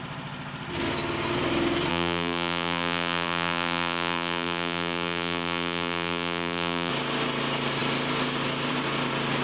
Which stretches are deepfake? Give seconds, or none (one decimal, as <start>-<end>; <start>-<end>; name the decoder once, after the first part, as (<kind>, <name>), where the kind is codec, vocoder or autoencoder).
1.9-6.9 (vocoder, BigVGAN v2)